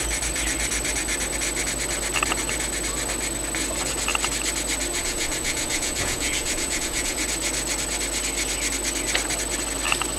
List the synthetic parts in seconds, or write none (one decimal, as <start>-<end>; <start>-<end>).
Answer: 4.9-7.2